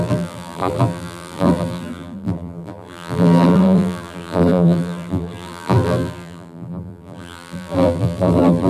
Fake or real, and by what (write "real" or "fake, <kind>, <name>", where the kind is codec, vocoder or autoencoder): fake, vocoder, BigVGAN v2